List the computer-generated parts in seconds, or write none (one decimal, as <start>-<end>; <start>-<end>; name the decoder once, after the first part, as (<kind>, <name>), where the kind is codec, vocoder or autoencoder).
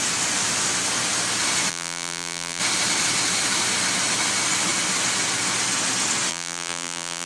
1.7-2.6 (vocoder, BigVGAN v2); 6.3-7.3